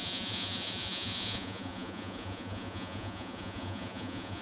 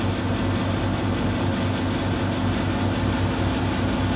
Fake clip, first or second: first